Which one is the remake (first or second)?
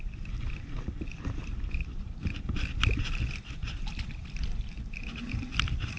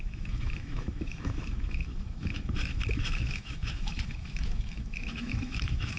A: second